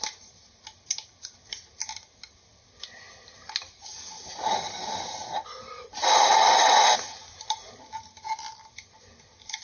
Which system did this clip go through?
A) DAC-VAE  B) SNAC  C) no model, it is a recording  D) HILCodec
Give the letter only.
C